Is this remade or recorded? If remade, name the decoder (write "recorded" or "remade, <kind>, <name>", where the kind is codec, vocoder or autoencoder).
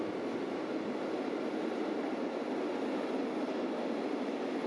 recorded